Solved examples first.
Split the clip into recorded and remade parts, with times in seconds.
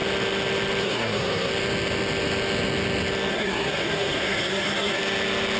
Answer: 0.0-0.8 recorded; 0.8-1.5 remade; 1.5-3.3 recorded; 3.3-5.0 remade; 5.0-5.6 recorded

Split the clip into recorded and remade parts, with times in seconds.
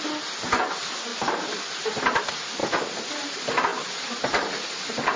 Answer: 0.0-5.2 recorded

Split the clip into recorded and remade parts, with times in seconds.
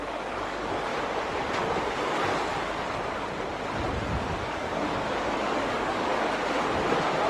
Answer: 0.0-0.9 remade; 0.9-2.0 recorded; 2.0-2.5 remade; 2.5-4.3 recorded; 4.3-6.1 remade; 6.1-7.3 recorded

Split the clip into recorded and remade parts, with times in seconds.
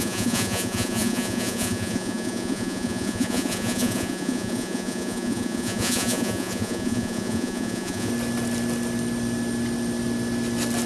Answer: 0.0-8.1 remade; 8.1-10.9 recorded